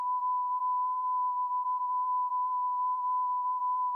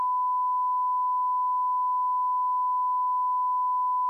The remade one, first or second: first